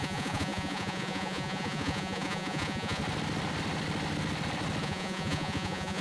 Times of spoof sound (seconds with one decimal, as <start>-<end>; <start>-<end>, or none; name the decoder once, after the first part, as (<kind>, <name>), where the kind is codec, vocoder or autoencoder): 0.0-3.0 (vocoder, Vocos); 4.8-6.0